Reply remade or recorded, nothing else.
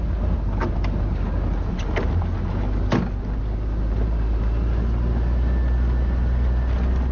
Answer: recorded